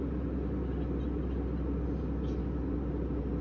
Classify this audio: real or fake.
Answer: real